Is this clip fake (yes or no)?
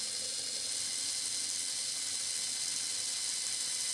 no